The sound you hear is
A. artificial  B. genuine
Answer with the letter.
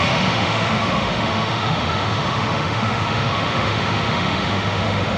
A